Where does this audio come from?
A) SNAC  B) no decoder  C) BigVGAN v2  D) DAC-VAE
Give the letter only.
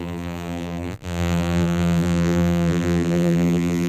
C